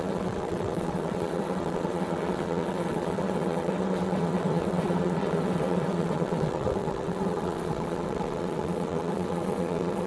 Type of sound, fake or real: fake